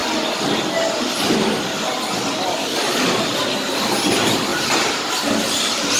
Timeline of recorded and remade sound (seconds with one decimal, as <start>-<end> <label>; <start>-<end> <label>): 0.0-6.0 recorded